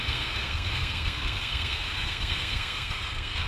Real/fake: fake